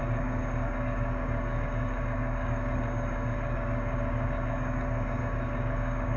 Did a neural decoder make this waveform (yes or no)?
yes